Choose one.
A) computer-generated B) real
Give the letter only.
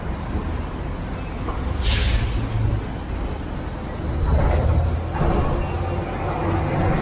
B